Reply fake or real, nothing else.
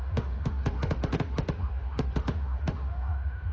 fake